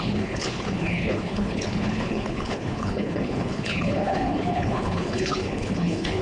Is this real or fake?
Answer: fake